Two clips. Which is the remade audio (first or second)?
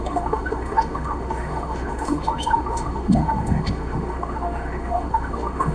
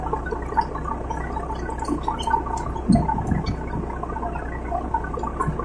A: first